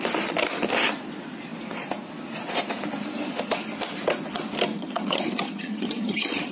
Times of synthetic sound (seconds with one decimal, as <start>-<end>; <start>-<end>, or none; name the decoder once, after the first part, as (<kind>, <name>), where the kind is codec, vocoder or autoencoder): 4.7-6.5 (vocoder, HiFi-GAN)